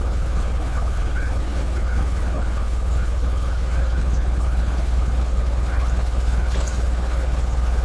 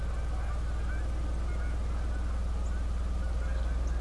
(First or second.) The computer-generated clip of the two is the first